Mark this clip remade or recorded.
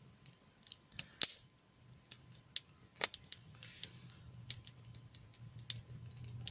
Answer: recorded